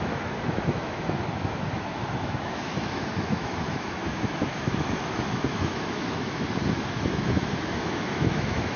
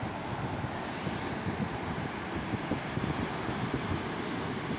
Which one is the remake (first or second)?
first